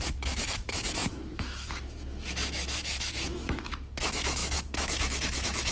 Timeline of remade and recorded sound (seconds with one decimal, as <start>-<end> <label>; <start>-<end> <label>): 0.0-5.7 remade